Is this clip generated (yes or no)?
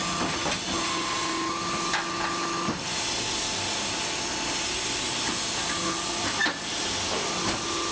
no